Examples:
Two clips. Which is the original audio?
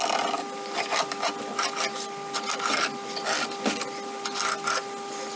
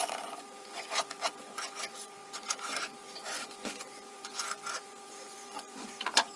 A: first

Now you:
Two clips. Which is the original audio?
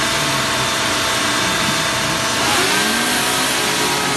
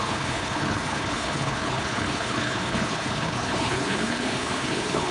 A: first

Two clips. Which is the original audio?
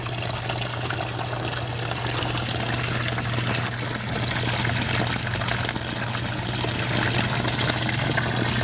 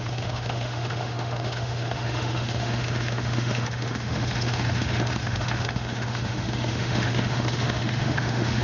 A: first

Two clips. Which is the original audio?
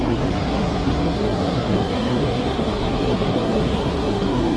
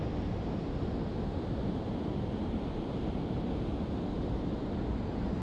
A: second